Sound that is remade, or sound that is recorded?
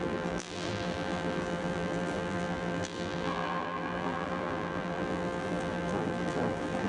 remade